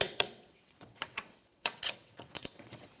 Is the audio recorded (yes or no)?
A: no